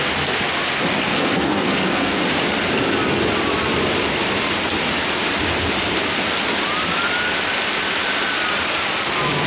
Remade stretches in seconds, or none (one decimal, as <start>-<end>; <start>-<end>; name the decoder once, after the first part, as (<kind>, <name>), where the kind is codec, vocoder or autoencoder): 1.1-2.2 (codec, SNAC)